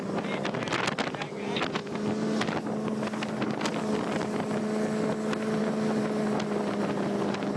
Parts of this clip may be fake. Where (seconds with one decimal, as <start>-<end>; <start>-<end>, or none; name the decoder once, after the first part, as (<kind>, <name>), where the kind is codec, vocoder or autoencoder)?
none